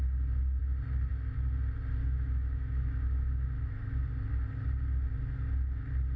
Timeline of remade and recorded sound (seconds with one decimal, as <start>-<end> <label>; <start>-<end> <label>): 0.0-2.0 recorded; 2.0-4.0 remade; 4.0-6.2 recorded